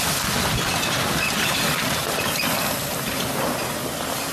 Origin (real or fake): real